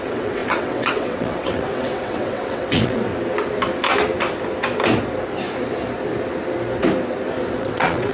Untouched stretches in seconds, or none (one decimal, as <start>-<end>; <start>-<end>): 3.1-7.5